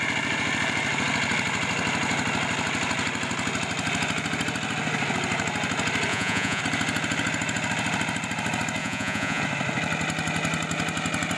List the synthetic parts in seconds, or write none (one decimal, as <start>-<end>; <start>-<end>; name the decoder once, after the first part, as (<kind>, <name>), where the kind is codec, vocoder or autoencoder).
6.1-6.6 (vocoder, Vocos); 8.8-9.4